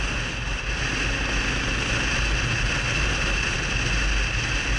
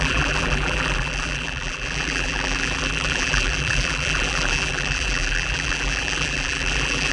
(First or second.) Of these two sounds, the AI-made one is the second